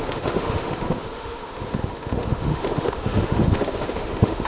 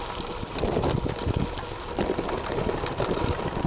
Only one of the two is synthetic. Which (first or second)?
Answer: first